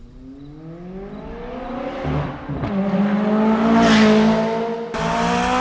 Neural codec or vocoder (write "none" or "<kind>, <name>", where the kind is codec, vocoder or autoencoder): none